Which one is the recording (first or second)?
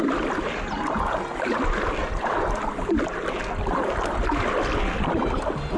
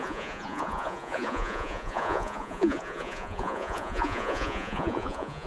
first